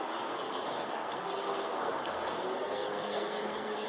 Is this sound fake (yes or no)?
yes